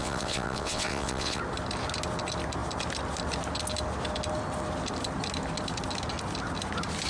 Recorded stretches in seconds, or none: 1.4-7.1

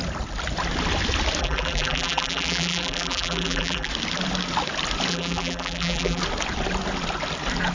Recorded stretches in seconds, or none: 0.0-1.4; 3.9-5.1; 6.2-7.7

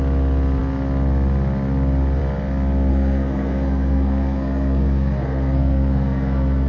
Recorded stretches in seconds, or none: 0.0-2.9

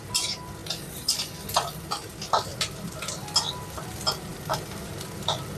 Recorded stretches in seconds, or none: 0.0-5.6

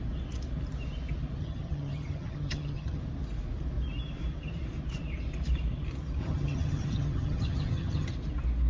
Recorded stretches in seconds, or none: 0.0-1.4; 3.0-6.2; 8.1-8.7

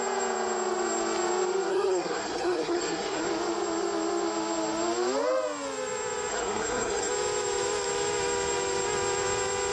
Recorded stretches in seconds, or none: 0.0-1.7; 3.2-6.3; 7.1-9.7